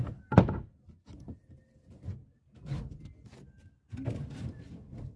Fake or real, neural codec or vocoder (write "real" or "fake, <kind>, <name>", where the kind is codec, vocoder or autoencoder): real